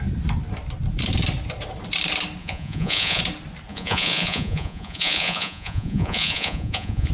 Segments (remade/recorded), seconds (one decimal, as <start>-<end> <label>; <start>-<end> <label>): 0.0-2.4 recorded; 2.4-3.2 remade; 3.2-3.7 recorded; 3.7-7.1 remade

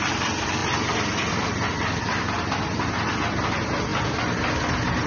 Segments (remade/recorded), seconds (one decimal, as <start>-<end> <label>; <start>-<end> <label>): 0.0-5.1 recorded

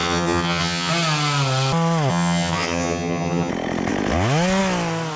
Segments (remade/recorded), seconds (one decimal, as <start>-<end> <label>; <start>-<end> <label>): 0.0-0.9 remade; 0.9-2.1 recorded; 2.1-3.5 remade; 3.5-5.2 recorded

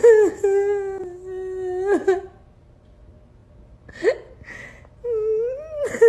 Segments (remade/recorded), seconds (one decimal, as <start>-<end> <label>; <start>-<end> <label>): 0.0-6.1 recorded

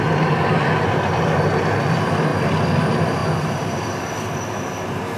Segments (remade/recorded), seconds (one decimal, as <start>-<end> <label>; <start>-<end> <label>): 0.0-5.2 recorded